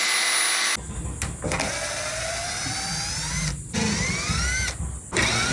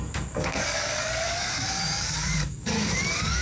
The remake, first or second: second